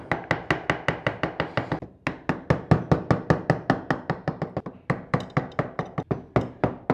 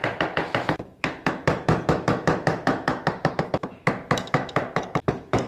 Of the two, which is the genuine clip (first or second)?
first